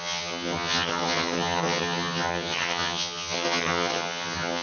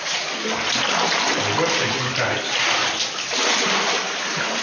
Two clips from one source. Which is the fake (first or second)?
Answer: first